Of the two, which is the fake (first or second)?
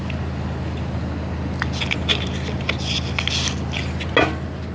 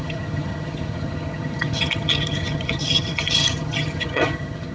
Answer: second